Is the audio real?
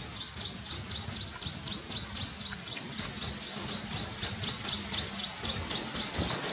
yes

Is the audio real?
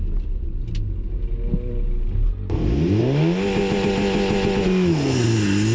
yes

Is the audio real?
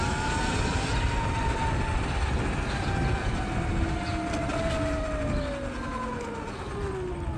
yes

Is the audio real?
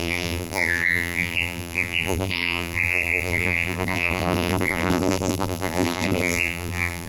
no